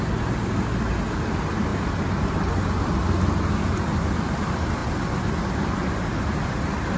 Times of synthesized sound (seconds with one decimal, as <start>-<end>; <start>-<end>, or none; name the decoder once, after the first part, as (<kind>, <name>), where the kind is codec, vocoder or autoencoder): none